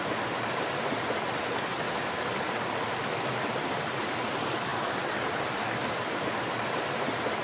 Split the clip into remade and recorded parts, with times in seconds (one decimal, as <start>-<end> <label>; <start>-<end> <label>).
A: 0.0-7.4 recorded